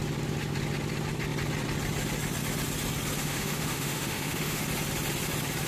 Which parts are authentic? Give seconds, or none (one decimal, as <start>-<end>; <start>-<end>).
0.0-3.2; 4.6-5.7